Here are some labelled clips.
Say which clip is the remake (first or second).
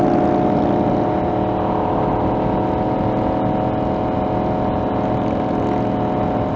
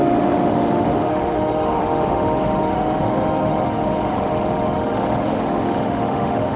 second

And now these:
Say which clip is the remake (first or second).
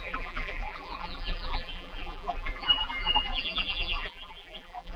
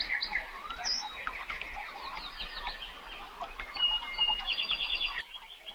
first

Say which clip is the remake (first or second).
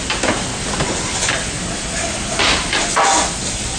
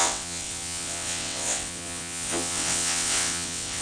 second